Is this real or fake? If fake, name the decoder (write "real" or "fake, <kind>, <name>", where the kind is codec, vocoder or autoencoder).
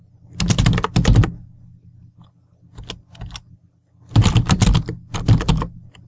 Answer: real